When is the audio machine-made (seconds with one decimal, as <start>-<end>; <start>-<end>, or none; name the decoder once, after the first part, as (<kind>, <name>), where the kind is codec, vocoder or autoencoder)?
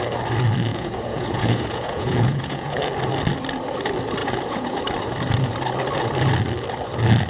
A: 0.7-2.8 (vocoder, Vocos); 4.2-4.8